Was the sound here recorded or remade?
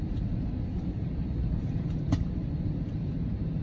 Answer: remade